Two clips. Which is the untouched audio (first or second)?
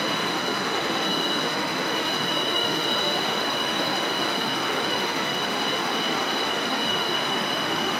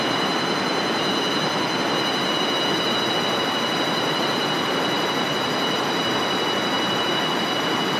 second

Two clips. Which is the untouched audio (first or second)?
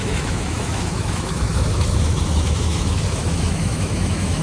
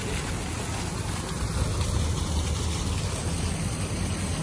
second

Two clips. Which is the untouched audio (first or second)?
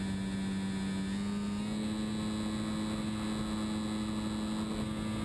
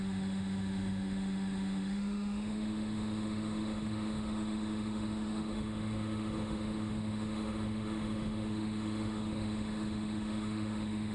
first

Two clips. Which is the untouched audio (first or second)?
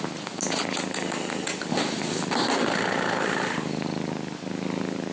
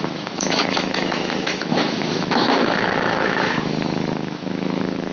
first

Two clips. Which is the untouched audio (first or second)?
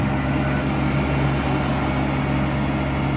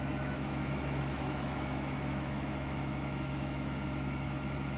first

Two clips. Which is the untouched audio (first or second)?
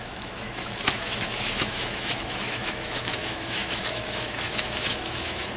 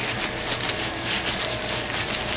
second